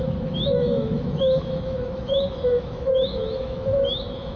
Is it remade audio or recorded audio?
remade